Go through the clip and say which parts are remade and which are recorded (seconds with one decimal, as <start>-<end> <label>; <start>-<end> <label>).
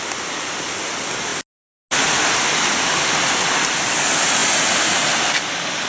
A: 0.0-1.3 remade; 1.3-2.9 recorded; 2.9-5.9 remade